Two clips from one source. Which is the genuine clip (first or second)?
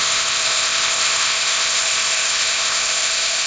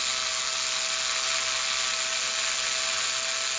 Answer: second